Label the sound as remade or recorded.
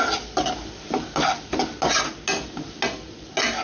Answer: recorded